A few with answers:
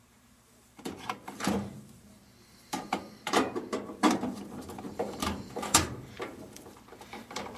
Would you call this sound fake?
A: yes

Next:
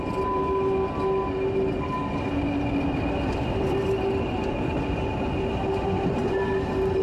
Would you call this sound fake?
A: no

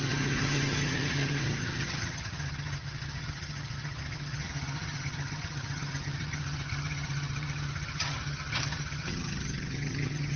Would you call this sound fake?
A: yes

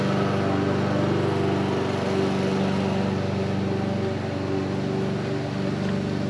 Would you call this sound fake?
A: no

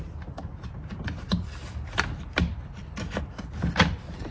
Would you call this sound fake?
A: no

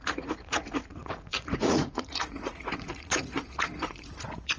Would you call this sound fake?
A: yes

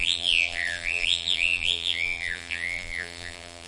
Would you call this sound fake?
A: yes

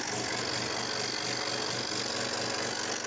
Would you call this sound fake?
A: no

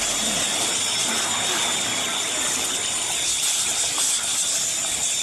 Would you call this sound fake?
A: no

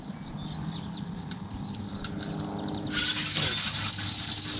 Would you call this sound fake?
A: no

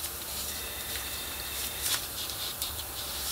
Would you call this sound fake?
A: yes